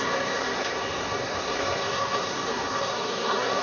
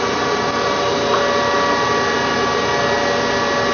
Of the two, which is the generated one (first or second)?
first